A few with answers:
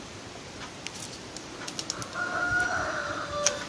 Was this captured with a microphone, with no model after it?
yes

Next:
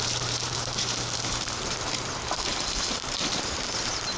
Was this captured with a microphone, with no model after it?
no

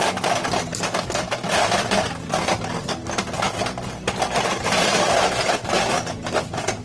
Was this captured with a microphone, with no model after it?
yes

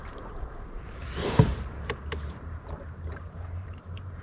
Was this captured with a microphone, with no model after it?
no